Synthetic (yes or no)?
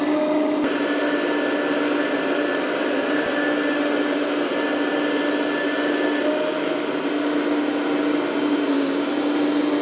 no